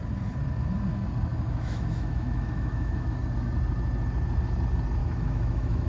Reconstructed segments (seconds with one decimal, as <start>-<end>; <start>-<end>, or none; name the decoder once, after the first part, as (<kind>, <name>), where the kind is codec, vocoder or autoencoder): 1.3-3.2 (autoencoder, DAC-VAE); 5.0-5.9